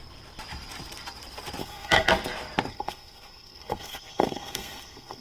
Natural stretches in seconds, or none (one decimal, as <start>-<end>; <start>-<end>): 0.0-1.6; 2.1-2.7